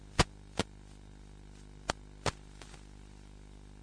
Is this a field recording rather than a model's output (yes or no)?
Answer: yes